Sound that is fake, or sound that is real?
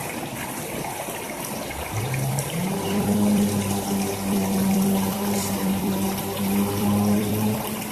fake